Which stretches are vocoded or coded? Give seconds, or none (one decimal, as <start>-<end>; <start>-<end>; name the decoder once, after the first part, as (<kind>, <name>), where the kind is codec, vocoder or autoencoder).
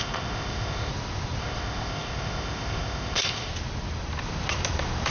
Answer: 0.0-0.9 (codec, ZipCodec); 1.4-3.5